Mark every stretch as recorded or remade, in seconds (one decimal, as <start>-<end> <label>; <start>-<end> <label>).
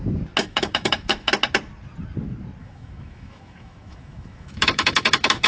0.0-0.4 recorded; 0.4-1.3 remade; 1.3-2.6 recorded; 2.6-5.5 remade